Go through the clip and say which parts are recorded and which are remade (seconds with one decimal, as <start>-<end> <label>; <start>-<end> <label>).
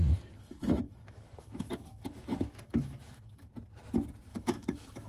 0.0-0.4 recorded; 0.4-3.5 remade; 3.5-4.3 recorded; 4.3-5.1 remade